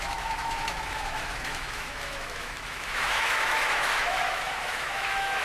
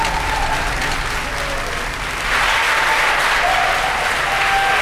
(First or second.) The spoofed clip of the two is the first